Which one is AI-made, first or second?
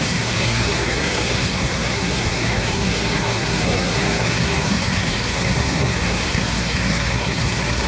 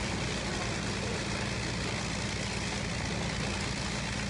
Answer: first